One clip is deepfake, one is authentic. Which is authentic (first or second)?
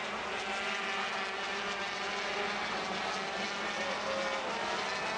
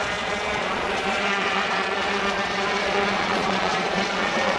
first